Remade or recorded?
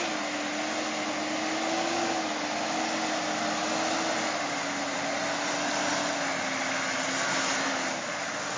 recorded